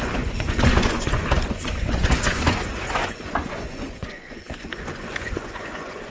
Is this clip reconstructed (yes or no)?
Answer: yes